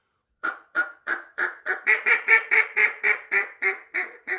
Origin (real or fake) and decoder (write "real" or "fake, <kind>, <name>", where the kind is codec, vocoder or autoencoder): fake, vocoder, Vocos